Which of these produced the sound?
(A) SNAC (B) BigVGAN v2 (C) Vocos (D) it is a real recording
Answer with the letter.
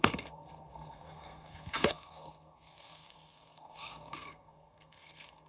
A